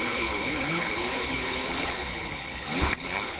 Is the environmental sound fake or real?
fake